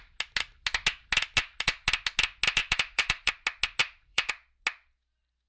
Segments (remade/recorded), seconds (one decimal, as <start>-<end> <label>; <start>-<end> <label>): 0.0-2.6 recorded; 2.6-3.3 remade; 3.3-3.8 recorded; 3.8-4.3 remade; 4.3-5.5 recorded